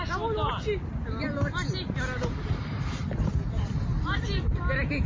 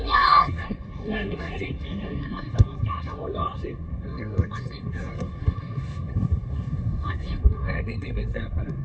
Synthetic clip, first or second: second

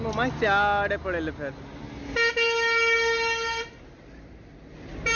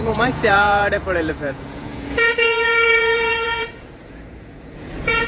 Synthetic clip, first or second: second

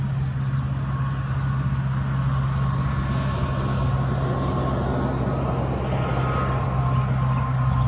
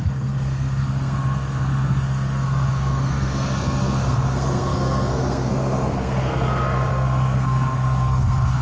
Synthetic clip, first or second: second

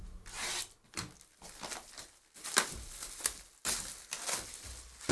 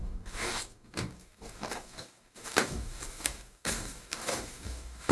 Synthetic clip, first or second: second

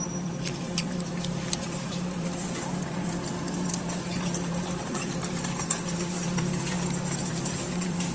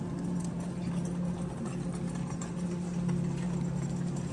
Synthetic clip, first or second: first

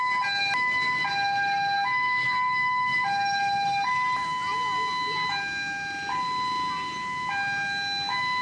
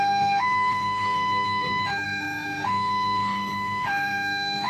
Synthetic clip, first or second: second